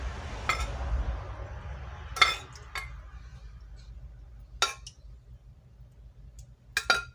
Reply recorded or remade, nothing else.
recorded